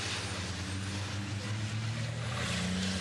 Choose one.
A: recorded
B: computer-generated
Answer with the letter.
A